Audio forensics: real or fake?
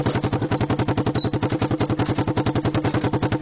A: real